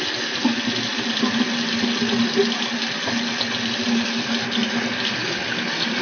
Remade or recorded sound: recorded